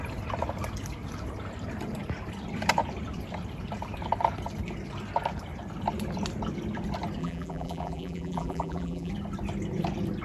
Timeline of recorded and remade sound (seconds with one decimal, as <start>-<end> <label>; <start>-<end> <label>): 0.0-7.2 recorded; 7.2-9.1 remade; 9.1-10.2 recorded